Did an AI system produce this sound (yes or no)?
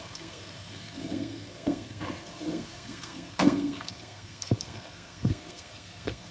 yes